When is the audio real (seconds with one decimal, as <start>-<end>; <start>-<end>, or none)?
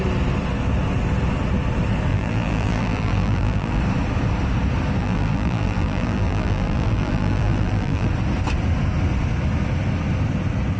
0.0-2.1; 3.8-5.0; 8.1-10.8